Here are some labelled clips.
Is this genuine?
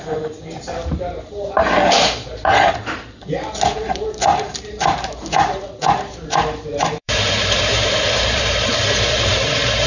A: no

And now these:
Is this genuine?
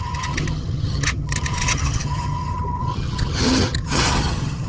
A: no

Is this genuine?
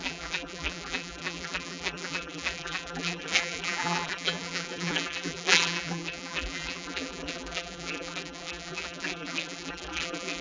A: no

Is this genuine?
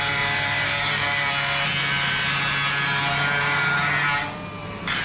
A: yes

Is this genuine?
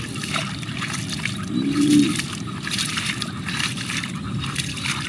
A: yes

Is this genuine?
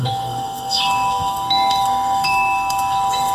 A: no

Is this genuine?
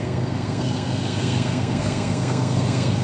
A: no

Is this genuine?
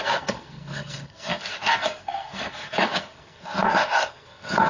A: no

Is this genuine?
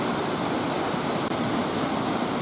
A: yes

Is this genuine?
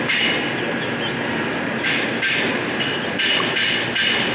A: yes